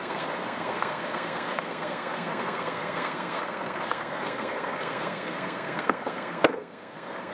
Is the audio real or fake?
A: fake